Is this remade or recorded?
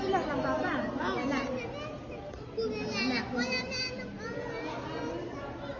recorded